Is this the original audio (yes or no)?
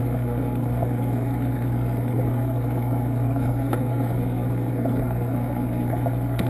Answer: no